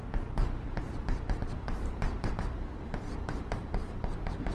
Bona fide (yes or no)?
no